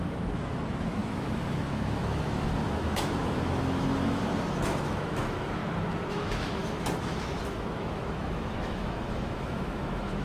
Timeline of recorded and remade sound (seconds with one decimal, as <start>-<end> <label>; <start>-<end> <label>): 0.0-5.6 remade; 5.6-6.1 recorded; 6.1-10.2 remade